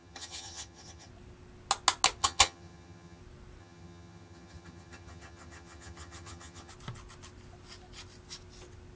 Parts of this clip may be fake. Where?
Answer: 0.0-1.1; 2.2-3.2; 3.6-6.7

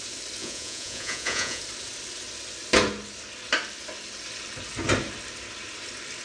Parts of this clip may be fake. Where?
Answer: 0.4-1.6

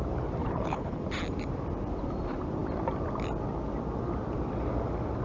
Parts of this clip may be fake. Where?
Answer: 0.4-1.0

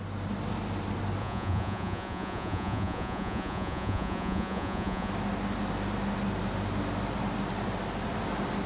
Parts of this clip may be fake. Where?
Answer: 1.2-5.1

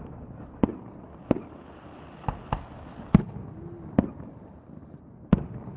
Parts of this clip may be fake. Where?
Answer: none

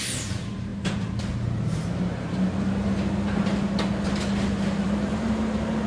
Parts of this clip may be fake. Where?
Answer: 0.7-2.9; 4.8-5.9

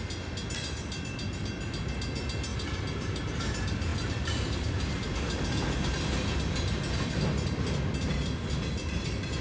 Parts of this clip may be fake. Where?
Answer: 2.5-3.2; 3.9-4.9

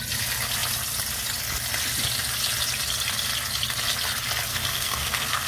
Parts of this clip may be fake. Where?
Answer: 4.5-5.5